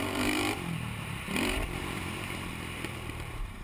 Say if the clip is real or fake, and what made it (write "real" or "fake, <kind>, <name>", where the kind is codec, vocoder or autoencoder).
fake, vocoder, BigVGAN v2